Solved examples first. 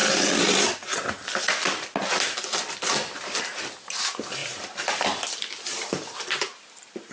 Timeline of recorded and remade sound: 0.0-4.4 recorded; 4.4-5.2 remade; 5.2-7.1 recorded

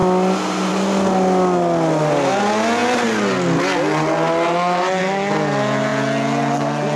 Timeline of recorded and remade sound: 0.0-7.0 recorded

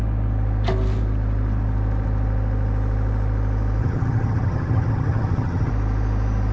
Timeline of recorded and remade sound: 0.0-3.8 recorded; 3.8-5.7 remade; 5.7-6.5 recorded

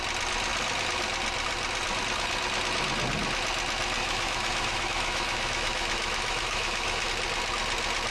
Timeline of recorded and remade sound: 0.0-4.0 recorded; 4.0-7.1 remade; 7.1-8.1 recorded

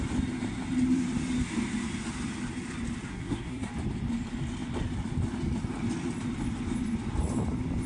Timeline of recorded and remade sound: 0.0-3.1 recorded; 3.1-3.7 remade; 3.7-7.9 recorded

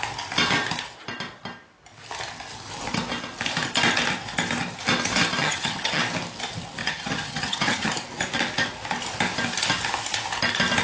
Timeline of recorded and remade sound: 0.0-5.4 recorded; 5.4-6.0 remade; 6.0-6.8 recorded; 6.8-7.9 remade; 7.9-10.8 recorded